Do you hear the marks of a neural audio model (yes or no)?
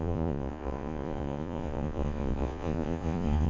yes